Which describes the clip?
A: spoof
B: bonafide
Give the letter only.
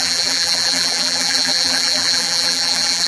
A